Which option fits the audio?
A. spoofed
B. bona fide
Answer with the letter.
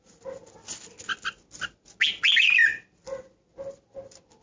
B